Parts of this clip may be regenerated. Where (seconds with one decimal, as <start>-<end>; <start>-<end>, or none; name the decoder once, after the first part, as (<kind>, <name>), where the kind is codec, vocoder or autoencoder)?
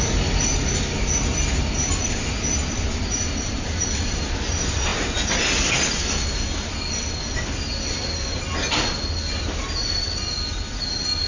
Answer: none